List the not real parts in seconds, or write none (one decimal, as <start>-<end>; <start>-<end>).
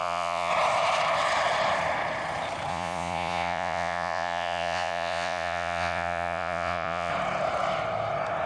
0.0-0.5; 2.7-7.1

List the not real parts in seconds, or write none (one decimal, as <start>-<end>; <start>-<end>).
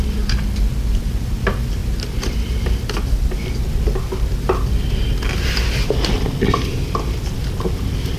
none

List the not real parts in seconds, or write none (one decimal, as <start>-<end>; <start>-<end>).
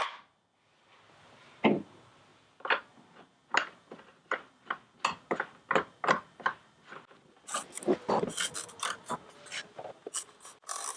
none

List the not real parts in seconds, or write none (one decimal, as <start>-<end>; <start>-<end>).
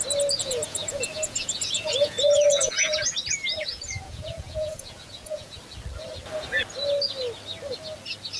0.4-3.1; 3.7-5.6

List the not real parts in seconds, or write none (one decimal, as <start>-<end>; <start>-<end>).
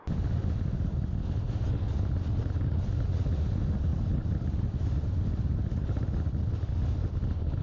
none